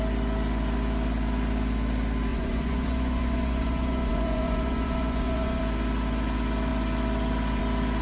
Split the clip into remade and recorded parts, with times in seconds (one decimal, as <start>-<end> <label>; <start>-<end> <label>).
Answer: 0.0-2.3 recorded; 2.3-5.6 remade; 5.6-8.0 recorded